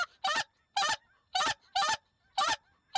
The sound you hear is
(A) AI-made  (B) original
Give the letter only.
A